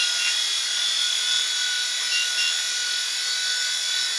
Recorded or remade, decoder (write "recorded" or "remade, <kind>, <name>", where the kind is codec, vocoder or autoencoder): recorded